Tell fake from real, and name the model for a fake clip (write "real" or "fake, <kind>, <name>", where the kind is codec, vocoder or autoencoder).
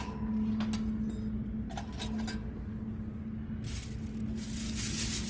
real